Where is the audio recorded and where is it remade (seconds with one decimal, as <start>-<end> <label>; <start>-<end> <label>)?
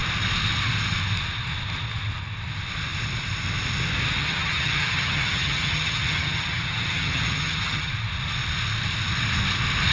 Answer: 0.0-4.2 recorded; 4.2-7.9 remade; 7.9-9.9 recorded